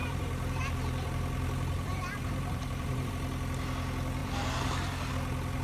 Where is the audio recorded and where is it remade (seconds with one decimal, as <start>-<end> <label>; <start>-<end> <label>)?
0.0-3.1 remade; 3.1-4.2 recorded; 4.2-5.1 remade; 5.1-5.6 recorded